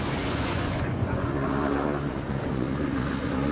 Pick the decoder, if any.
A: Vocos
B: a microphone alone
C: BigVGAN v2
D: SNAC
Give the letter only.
A